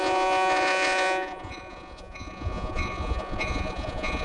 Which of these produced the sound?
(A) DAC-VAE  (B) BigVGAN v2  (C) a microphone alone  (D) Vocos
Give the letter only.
D